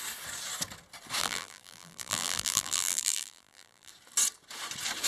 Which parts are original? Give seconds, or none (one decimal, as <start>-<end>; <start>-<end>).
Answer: 0.0-1.2; 3.9-5.1